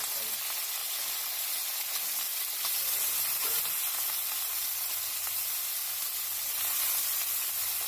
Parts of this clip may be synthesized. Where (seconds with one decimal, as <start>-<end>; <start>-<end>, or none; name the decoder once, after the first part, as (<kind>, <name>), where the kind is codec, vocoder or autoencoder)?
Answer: none

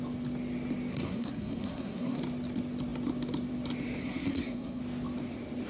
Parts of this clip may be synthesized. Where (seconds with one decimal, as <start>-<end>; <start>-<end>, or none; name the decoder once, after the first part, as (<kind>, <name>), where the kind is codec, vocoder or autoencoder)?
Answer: 0.9-2.2 (codec, SNAC); 4.0-4.8

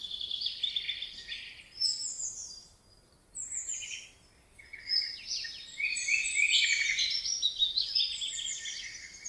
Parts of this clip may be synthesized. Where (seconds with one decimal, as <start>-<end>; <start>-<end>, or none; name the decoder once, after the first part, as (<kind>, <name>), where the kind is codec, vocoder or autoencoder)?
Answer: none

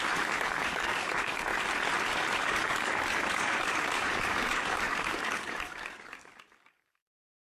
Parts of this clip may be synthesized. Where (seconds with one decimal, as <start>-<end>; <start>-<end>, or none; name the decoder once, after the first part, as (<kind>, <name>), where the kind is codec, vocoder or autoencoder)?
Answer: 0.0-1.5 (codec, DAC); 2.0-7.4

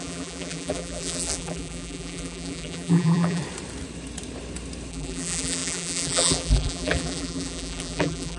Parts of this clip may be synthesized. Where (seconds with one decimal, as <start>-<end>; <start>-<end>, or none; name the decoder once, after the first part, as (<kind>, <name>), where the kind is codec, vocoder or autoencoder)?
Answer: 0.0-3.4 (vocoder, BigVGAN v2); 4.9-8.4

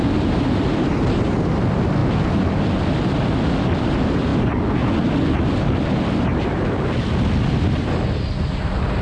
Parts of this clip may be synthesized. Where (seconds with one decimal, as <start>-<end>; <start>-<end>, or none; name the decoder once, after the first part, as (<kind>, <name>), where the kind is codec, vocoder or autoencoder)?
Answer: none

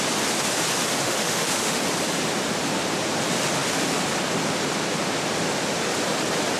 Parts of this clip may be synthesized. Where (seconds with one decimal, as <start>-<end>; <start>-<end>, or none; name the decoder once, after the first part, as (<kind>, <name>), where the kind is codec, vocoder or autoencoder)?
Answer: 1.0-1.8 (autoencoder, DAC-VAE)

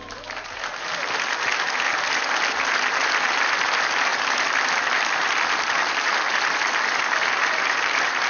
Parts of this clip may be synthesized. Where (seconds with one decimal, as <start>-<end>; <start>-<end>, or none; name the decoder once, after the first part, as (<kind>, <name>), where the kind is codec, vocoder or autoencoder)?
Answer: none